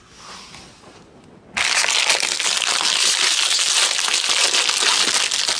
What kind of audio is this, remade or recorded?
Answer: recorded